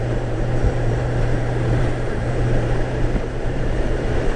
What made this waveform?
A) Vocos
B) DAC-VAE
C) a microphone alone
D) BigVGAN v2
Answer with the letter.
D